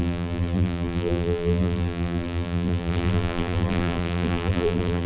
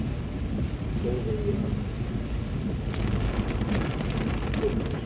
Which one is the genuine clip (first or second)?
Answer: second